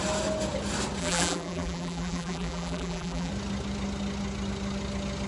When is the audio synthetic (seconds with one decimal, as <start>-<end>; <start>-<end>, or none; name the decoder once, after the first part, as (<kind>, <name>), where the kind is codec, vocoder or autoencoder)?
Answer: 1.0-3.3 (vocoder, BigVGAN v2)